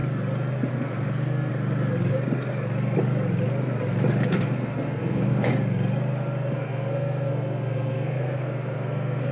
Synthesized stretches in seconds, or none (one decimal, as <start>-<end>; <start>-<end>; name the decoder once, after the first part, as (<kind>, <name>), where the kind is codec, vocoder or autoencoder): 0.7-1.5 (codec, SNAC); 4.3-5.5; 6.5-9.3